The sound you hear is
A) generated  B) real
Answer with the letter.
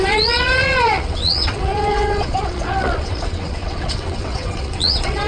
A